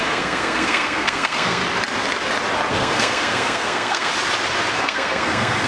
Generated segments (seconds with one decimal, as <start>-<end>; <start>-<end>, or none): 0.0-1.6; 2.7-4.1; 4.7-5.7